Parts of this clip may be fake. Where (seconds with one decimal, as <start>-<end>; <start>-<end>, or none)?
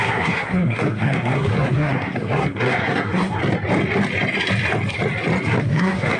0.0-3.4; 5.6-6.2